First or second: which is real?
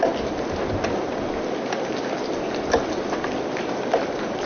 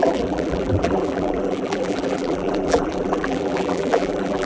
first